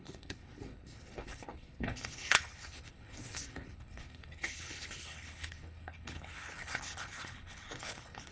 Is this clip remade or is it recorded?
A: remade